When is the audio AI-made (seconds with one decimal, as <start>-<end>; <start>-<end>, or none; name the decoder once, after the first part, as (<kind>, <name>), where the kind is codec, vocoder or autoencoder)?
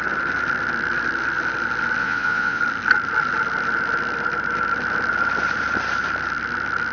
2.0-2.6 (vocoder, Vocos)